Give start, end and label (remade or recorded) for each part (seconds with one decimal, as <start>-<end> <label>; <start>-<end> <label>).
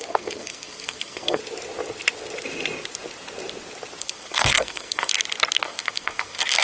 0.0-1.4 remade; 1.4-4.0 recorded; 4.0-5.1 remade; 5.1-5.6 recorded; 5.6-6.6 remade